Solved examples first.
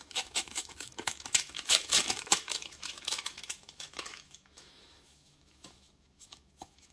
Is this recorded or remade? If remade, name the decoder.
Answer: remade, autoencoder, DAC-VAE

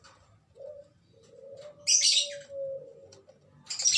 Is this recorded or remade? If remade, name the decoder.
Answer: recorded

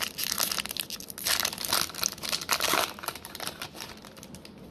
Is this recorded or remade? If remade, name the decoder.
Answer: recorded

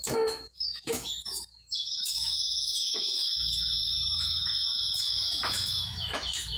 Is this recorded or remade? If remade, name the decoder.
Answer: remade, autoencoder, DAC-VAE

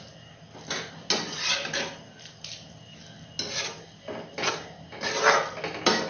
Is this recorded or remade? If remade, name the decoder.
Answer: recorded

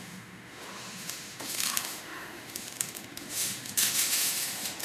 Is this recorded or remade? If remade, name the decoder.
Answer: remade, autoencoder, DAC-VAE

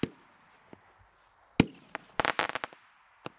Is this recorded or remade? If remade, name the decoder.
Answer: recorded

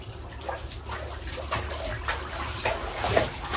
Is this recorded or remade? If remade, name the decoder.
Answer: recorded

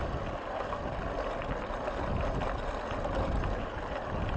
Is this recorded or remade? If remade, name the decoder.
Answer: recorded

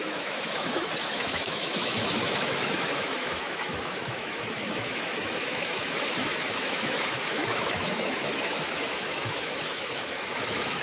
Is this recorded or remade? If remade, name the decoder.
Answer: remade, autoencoder, DAC-VAE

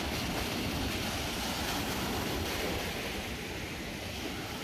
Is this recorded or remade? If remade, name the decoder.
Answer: recorded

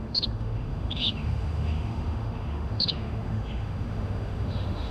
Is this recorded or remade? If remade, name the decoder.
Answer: remade, autoencoder, DAC-VAE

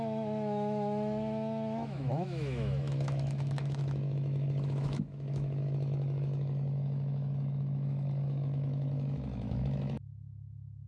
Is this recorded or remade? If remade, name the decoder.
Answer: remade, autoencoder, DAC-VAE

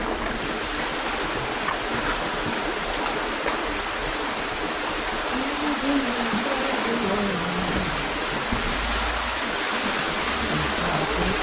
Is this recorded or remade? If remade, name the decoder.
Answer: recorded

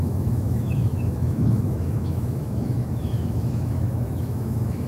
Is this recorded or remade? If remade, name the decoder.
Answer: remade, autoencoder, DAC-VAE